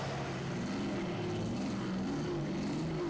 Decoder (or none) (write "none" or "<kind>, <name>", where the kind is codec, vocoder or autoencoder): none